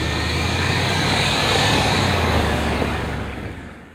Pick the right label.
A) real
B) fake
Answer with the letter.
B